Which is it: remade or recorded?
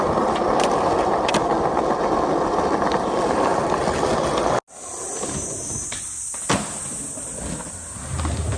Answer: recorded